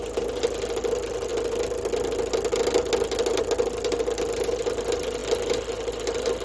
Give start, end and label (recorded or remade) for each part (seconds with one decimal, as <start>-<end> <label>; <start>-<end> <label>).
0.0-6.4 recorded